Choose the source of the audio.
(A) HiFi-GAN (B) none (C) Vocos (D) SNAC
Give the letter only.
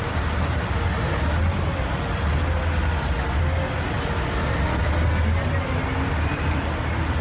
B